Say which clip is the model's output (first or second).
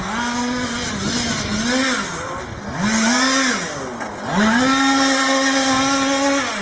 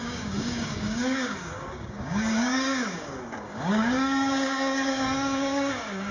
second